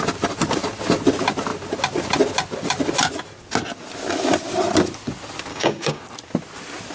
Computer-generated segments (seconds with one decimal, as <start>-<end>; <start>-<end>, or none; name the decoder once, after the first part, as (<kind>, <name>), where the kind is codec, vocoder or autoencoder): 5.5-6.0 (codec, DAC)